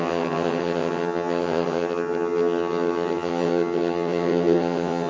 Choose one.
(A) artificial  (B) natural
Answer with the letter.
A